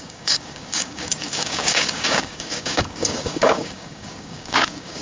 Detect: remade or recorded remade